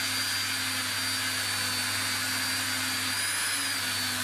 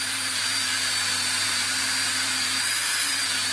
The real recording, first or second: first